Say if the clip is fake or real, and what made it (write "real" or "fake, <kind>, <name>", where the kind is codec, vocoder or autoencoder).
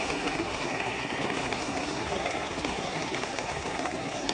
fake, codec, SNAC